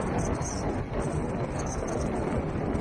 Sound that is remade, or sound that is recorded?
recorded